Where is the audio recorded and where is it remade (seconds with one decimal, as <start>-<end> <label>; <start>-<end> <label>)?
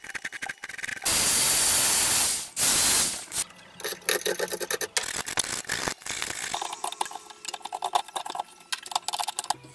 0.0-9.7 recorded